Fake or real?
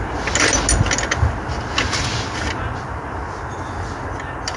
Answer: real